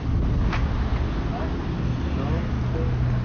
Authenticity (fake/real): real